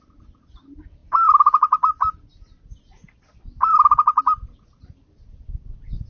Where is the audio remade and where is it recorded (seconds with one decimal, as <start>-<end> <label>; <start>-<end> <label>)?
0.0-6.1 recorded